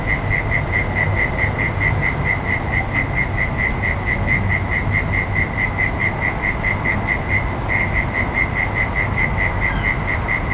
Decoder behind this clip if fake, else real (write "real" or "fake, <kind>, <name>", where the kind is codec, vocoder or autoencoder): real